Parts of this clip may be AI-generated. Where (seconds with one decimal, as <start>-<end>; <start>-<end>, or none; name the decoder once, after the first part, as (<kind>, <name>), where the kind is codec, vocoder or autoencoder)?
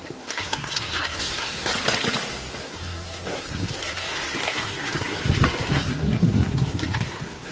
0.0-1.7 (codec, SNAC); 2.6-7.5